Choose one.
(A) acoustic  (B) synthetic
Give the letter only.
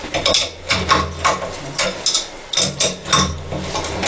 A